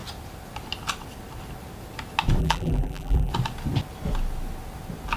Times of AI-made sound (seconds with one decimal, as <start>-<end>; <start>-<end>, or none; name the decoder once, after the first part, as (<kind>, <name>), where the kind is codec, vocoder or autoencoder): 2.4-3.3 (vocoder, BigVGAN v2)